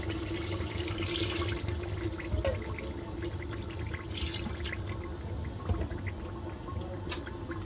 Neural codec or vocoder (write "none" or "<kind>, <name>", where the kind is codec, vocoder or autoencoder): none